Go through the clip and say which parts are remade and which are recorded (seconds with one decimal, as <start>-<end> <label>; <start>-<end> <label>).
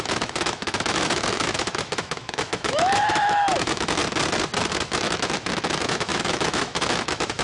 0.0-4.0 remade; 4.0-4.7 recorded; 4.7-7.4 remade